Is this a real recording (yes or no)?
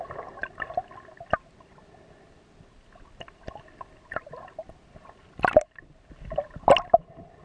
yes